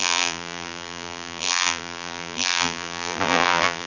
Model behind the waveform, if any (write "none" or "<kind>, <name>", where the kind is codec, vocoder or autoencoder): vocoder, BigVGAN v2